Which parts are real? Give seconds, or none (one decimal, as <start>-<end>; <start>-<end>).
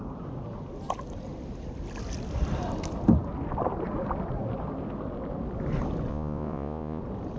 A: 0.0-6.1; 7.0-7.4